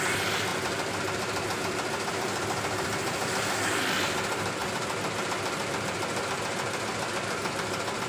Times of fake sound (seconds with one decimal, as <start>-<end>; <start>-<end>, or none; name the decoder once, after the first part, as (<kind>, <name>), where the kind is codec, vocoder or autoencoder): none